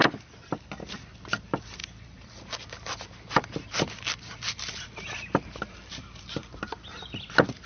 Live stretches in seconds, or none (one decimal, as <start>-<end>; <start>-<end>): 0.0-0.8